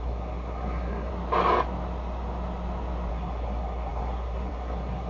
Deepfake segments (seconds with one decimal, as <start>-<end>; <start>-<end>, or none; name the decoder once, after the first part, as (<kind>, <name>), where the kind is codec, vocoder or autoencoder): 0.0-1.1 (codec, SNAC); 3.1-5.1